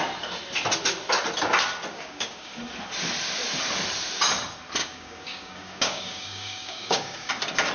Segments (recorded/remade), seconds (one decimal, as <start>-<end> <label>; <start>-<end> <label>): 0.0-1.9 recorded; 1.9-2.6 remade; 2.6-4.8 recorded; 4.8-7.3 remade; 7.3-7.7 recorded